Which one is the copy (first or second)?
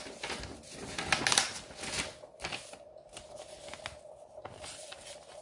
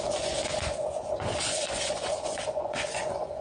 second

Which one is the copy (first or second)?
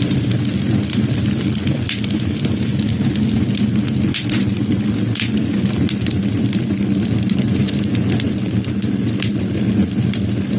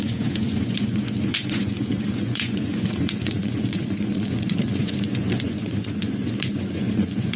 second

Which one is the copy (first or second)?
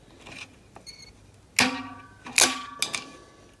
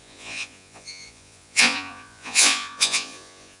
second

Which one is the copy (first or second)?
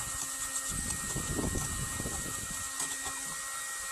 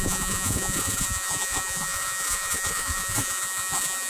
second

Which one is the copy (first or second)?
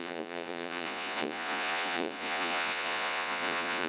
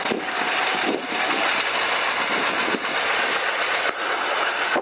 first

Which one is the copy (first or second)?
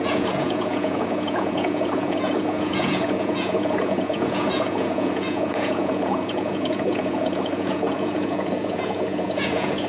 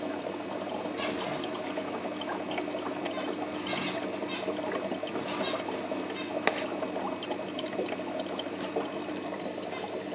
first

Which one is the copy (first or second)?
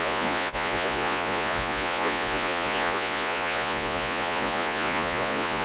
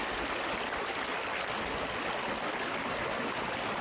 first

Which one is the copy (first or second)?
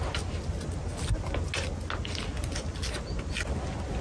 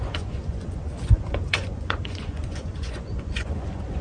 second